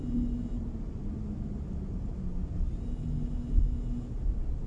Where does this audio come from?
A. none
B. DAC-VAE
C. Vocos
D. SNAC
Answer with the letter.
A